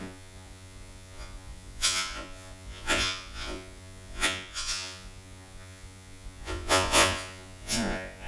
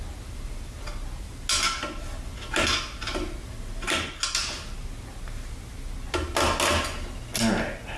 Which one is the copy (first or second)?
first